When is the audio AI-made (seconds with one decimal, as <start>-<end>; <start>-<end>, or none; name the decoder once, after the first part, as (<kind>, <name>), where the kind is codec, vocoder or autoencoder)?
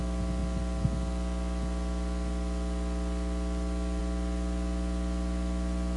none